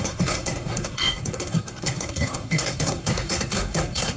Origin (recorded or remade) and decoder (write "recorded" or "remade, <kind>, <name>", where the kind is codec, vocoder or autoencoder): remade, codec, SNAC